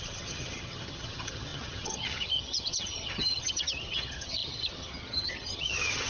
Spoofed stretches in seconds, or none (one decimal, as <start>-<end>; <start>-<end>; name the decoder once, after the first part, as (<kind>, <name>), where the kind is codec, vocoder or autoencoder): 0.0-6.1 (vocoder, HiFi-GAN)